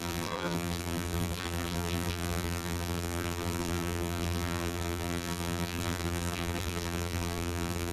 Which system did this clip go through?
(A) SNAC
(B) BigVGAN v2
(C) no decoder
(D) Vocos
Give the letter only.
B